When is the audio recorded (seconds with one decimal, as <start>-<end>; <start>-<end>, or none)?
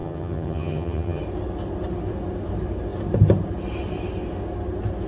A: 1.2-5.1